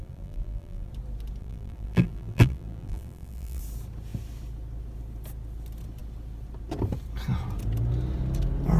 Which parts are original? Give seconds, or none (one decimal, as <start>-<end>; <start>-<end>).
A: 0.9-1.4; 3.6-8.8